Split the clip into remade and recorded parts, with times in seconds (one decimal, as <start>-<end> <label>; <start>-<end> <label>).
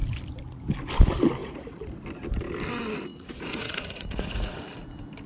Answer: 0.0-1.4 recorded; 1.4-1.9 remade; 1.9-3.1 recorded; 3.1-4.6 remade; 4.6-5.3 recorded